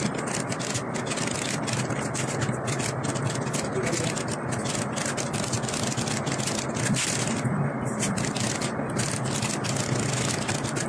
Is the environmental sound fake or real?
real